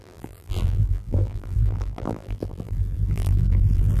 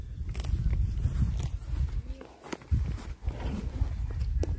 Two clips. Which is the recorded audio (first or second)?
second